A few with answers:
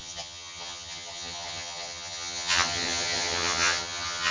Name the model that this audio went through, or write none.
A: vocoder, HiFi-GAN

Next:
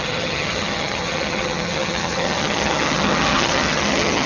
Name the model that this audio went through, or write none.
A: vocoder, HiFi-GAN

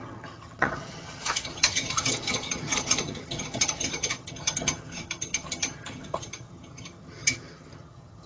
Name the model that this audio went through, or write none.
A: vocoder, HiFi-GAN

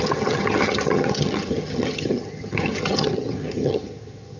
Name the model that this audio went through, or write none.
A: vocoder, HiFi-GAN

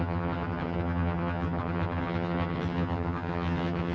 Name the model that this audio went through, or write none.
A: vocoder, HiFi-GAN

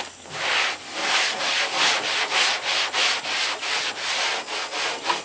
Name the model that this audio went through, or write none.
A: none